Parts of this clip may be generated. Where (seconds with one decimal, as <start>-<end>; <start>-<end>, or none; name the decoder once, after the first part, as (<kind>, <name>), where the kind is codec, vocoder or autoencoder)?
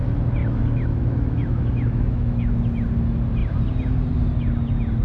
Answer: 0.4-2.5 (autoencoder, DAC-VAE)